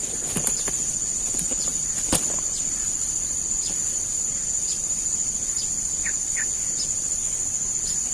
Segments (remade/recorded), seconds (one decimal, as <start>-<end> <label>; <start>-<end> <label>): 0.0-8.1 recorded